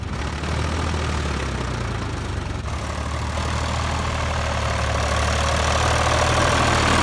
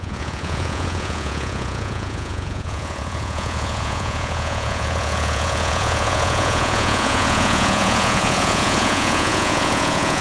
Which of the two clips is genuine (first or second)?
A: first